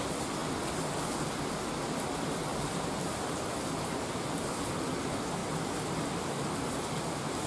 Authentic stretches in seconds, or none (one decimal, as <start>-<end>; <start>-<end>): 0.0-2.5; 4.1-7.5